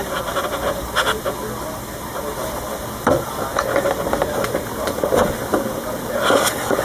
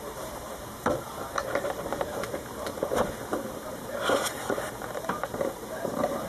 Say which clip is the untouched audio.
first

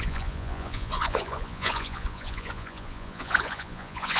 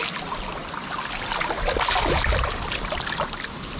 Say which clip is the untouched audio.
second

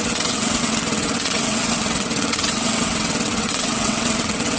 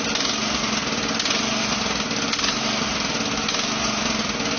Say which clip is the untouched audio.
second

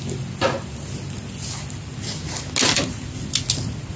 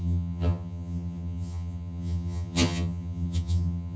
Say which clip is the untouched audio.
first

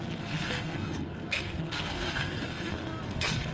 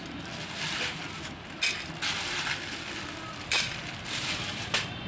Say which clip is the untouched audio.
second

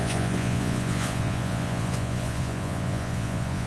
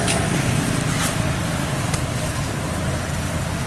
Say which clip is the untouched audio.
second